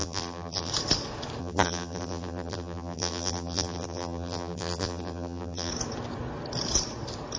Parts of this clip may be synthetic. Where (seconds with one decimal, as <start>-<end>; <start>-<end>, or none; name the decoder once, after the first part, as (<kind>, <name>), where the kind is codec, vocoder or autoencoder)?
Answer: 0.0-0.7 (vocoder, BigVGAN v2); 1.4-5.7

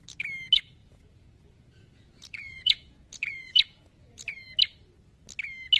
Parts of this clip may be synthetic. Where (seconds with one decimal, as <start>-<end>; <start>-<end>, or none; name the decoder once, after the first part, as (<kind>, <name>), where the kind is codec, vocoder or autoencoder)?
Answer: 0.8-4.3 (vocoder, Vocos)

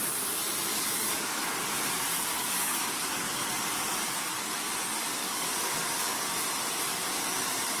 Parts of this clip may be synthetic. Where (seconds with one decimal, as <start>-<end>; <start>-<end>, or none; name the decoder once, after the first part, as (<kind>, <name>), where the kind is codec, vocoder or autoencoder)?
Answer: 0.7-1.7 (codec, DAC); 2.1-3.5; 5.2-6.3

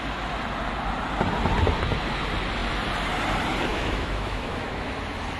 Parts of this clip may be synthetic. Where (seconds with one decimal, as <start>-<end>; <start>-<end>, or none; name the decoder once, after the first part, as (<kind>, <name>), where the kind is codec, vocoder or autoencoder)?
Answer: 3.7-4.9 (autoencoder, DAC-VAE)

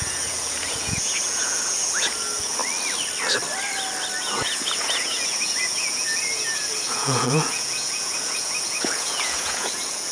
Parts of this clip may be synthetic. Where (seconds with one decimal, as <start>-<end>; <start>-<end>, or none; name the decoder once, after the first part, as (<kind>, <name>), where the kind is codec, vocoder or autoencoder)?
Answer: 0.0-2.6 (vocoder, Vocos); 4.2-10.1

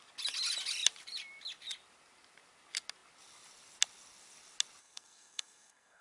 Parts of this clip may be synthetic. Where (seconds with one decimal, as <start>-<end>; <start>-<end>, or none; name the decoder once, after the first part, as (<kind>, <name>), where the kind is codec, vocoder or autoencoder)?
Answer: 4.8-6.0 (codec, SNAC)